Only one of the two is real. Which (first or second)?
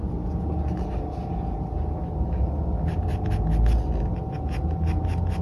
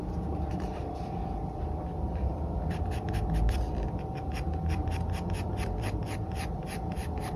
first